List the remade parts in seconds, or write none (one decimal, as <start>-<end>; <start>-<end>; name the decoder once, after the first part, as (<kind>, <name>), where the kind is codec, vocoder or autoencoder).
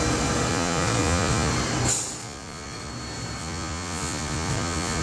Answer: 0.5-1.5 (vocoder, Vocos); 2.2-2.9; 3.4-5.0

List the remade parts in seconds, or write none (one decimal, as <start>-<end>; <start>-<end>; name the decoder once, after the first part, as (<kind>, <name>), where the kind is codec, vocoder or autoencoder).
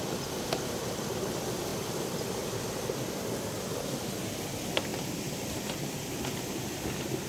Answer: none